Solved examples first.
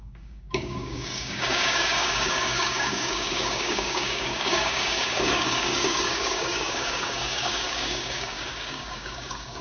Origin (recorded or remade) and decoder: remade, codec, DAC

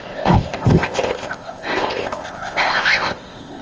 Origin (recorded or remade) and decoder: remade, codec, ZipCodec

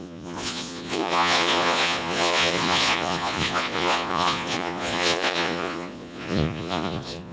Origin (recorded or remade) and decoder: remade, vocoder, Vocos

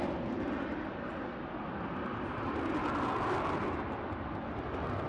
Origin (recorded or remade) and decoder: recorded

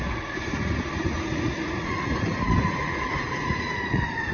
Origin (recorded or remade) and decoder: remade, vocoder, Vocos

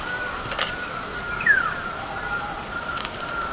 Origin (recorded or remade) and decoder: remade, vocoder, BigVGAN v2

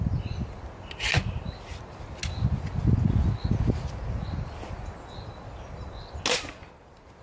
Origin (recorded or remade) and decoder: recorded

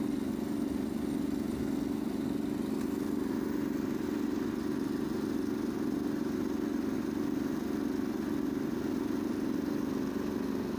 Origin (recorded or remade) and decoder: recorded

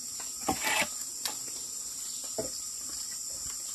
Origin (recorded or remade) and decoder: recorded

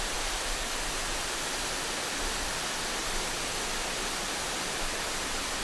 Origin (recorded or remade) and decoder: recorded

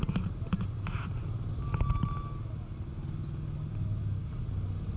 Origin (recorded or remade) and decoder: recorded